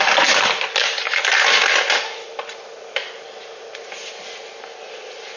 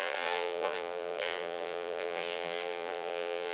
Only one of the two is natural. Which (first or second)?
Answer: first